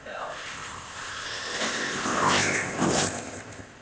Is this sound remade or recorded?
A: remade